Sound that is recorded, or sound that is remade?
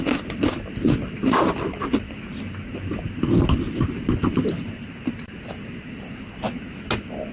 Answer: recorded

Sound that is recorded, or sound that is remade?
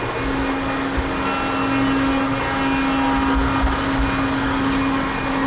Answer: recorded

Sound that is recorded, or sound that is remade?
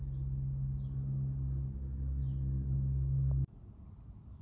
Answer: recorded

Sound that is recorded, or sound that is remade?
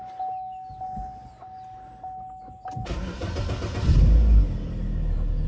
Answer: recorded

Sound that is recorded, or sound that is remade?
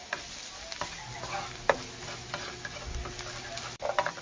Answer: recorded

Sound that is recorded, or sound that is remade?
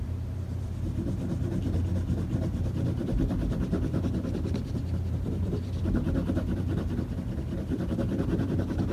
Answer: remade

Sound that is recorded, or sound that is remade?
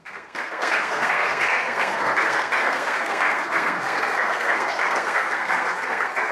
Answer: remade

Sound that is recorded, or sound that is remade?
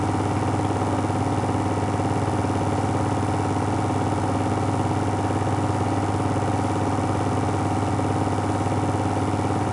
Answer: recorded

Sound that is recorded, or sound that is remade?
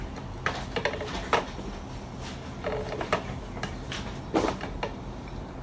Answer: recorded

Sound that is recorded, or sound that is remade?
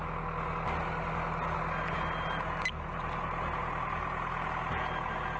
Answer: recorded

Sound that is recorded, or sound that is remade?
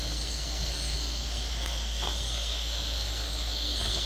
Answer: remade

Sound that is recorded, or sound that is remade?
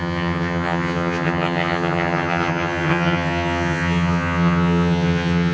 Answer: remade